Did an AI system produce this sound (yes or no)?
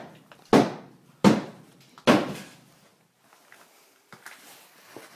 no